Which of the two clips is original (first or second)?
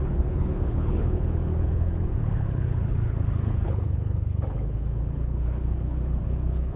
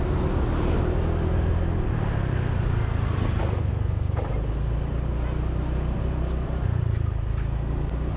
second